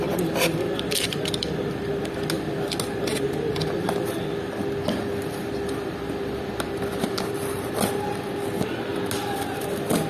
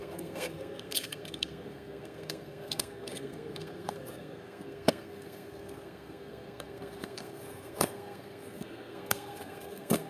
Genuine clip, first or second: first